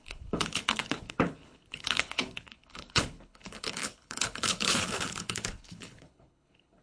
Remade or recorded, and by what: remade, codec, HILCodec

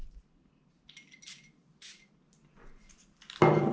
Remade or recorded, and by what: recorded